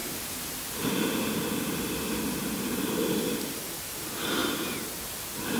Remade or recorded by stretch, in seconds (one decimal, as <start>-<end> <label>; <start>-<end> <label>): 0.0-5.6 remade